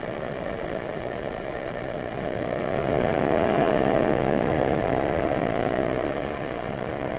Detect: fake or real fake